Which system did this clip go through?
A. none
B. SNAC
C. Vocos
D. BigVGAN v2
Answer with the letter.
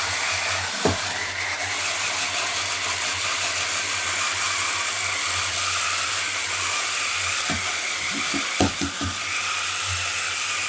A